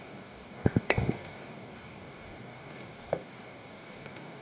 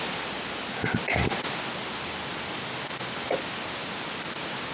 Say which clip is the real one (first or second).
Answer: second